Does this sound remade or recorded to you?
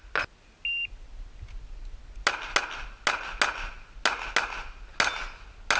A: recorded